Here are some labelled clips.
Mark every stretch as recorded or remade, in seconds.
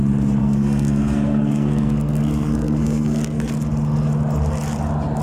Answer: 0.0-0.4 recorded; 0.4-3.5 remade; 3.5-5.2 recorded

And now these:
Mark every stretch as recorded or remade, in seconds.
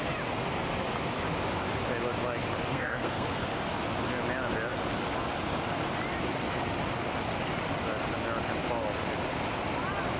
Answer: 0.0-2.7 recorded; 2.7-3.5 remade; 3.5-10.2 recorded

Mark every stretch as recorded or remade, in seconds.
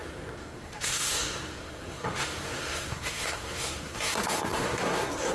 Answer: 0.0-5.3 remade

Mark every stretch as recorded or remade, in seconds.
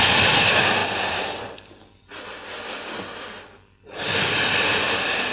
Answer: 0.0-5.3 recorded